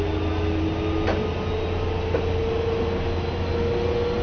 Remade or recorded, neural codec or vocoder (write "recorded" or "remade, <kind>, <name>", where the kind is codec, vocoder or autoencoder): recorded